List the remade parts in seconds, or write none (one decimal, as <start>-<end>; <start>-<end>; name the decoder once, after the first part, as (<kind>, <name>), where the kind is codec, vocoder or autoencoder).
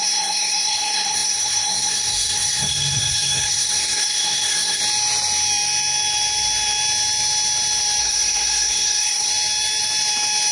0.0-4.8 (codec, SNAC); 8.0-9.3